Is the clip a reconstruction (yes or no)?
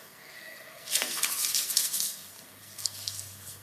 yes